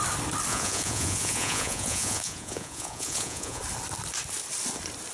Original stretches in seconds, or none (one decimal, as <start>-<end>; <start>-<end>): 0.0-0.5; 3.6-5.1